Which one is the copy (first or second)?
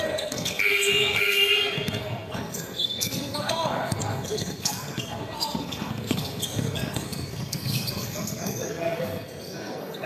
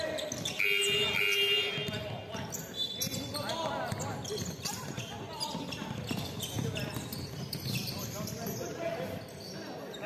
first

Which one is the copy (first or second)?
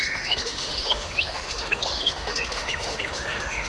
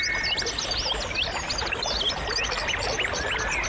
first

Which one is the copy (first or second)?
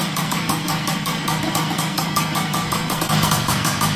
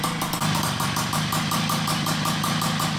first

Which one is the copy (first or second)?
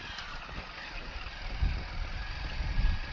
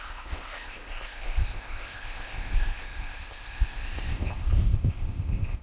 second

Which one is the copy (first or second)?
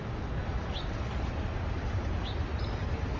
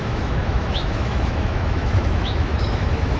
second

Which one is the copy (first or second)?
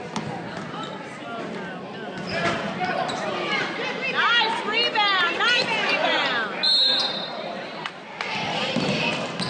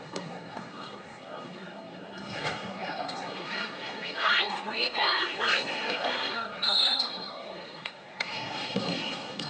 second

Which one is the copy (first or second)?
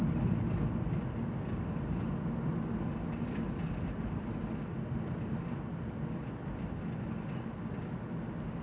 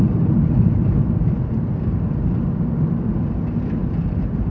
second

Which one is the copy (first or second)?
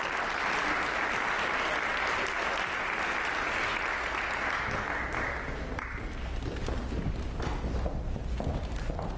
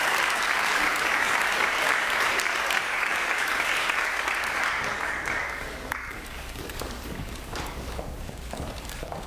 second